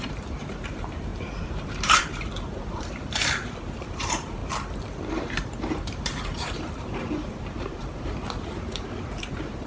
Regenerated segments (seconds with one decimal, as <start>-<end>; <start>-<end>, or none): 0.0-4.4; 5.1-9.7